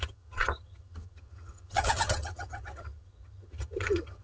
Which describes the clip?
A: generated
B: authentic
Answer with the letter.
A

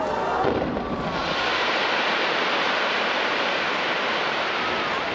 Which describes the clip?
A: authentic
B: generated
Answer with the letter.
A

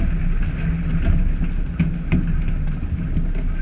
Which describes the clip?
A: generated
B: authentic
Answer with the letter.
B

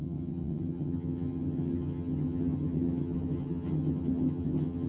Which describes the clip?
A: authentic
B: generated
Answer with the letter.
B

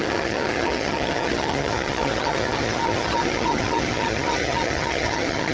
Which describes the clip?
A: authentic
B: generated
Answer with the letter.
B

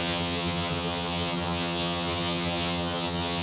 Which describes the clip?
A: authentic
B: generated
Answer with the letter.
B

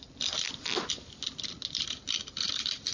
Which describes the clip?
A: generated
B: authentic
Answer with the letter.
B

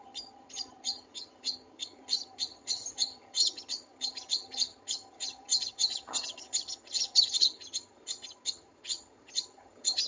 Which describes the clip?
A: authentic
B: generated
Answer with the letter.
B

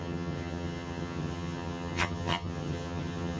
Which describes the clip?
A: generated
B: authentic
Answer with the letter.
A